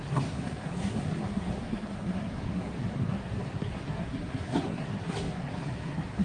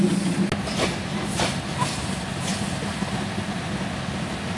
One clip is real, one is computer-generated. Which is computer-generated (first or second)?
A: first